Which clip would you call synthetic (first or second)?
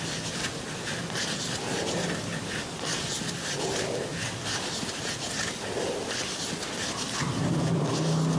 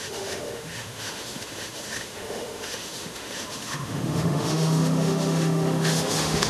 second